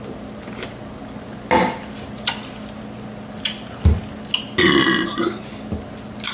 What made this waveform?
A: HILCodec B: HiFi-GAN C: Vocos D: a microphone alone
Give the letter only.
D